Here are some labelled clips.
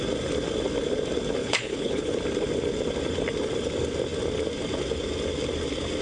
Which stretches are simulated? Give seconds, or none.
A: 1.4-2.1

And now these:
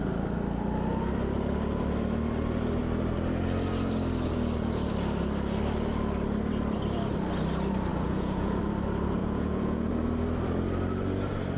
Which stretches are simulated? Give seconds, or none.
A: 7.9-8.6; 9.2-9.9

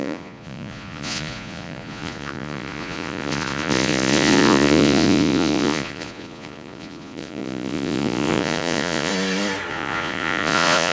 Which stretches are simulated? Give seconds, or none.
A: 0.0-9.1; 9.7-10.9

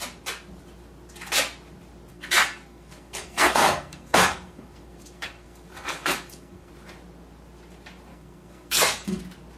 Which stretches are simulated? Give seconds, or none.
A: 2.1-6.7; 8.1-9.2

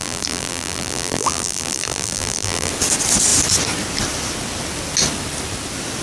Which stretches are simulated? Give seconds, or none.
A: 0.0-2.7

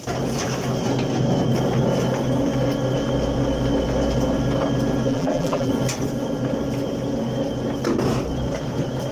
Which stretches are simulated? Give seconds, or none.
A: 5.1-5.7